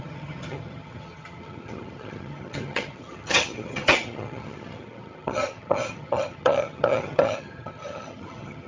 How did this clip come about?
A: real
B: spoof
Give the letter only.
B